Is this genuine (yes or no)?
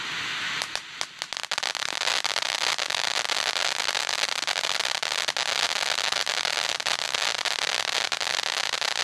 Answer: yes